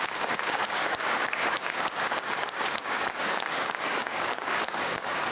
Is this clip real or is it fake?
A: fake